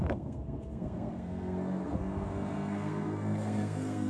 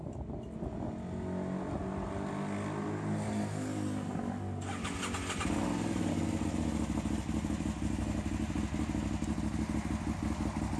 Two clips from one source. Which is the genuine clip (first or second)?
second